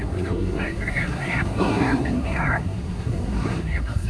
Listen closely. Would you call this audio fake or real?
fake